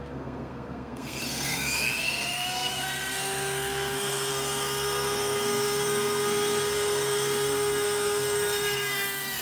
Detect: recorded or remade remade